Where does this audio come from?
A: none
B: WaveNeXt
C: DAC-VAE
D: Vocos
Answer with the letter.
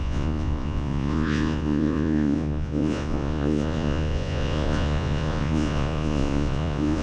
D